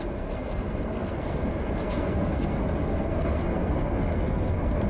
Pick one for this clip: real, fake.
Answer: fake